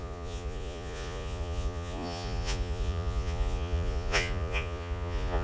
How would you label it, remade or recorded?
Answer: remade